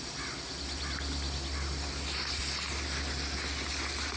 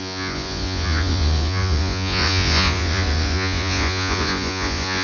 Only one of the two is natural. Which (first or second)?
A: first